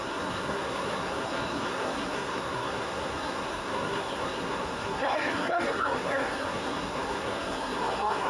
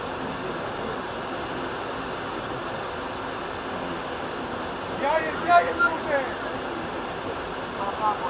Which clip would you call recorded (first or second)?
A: second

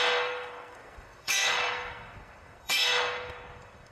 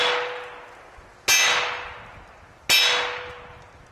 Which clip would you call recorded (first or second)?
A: second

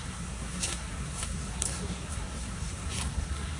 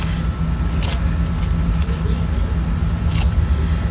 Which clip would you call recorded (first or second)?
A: second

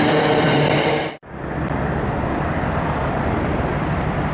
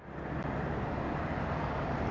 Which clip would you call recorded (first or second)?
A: second